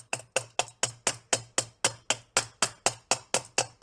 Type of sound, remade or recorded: recorded